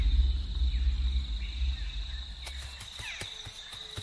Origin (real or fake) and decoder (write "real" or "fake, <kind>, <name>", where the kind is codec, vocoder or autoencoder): real